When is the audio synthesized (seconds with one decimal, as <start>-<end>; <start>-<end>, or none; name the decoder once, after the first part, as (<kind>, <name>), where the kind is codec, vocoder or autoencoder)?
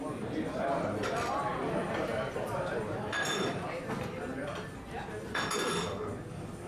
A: 1.5-5.5 (vocoder, BigVGAN v2)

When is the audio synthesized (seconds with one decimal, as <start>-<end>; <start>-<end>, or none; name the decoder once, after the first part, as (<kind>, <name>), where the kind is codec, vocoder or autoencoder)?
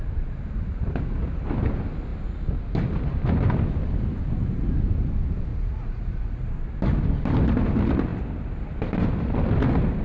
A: 5.5-6.5 (vocoder, Vocos)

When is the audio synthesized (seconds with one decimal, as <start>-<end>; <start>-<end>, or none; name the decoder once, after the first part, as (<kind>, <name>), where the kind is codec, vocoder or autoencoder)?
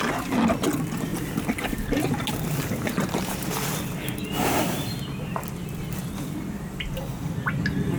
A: none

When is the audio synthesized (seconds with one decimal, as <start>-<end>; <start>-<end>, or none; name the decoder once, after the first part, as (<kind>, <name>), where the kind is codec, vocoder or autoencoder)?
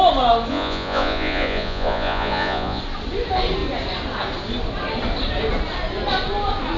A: 0.5-2.8 (vocoder, Vocos)